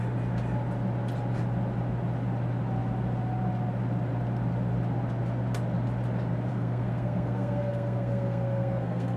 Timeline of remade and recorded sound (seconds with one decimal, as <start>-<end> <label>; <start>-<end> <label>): 0.0-6.5 recorded; 6.5-9.2 remade